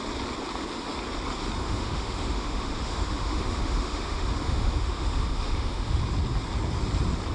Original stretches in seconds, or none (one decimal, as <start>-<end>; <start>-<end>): 0.0-1.6; 6.0-7.3